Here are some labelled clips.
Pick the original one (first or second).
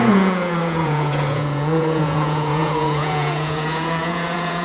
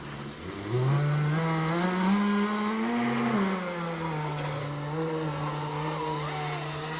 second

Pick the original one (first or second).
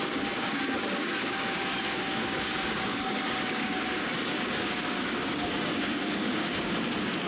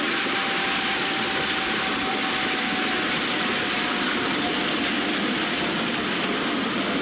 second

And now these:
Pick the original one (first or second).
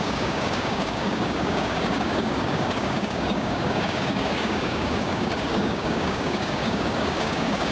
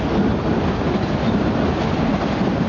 second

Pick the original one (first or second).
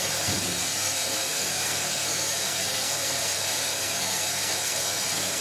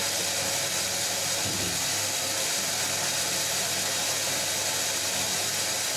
second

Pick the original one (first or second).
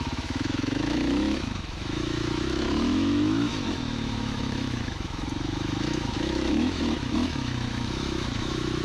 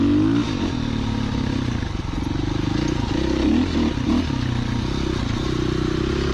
second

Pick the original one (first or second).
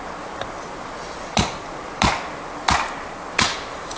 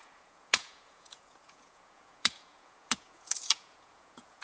first